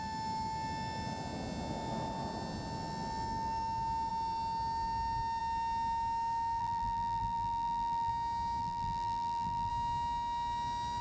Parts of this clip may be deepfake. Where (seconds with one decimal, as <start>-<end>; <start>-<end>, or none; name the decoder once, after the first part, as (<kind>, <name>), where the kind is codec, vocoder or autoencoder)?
6.6-8.1 (vocoder, BigVGAN v2); 8.6-9.7